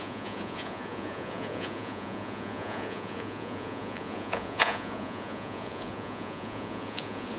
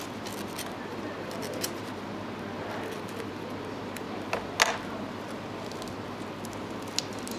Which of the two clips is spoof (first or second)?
first